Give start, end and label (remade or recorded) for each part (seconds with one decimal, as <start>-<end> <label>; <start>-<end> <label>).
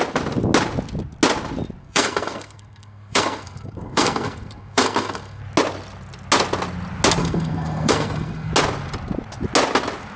0.0-1.8 recorded; 1.8-5.4 remade; 5.4-7.2 recorded; 7.2-8.5 remade; 8.5-10.2 recorded